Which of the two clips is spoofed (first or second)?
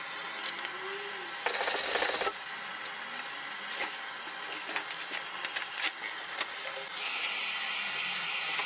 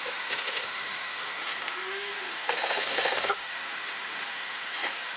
second